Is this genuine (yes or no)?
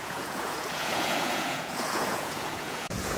no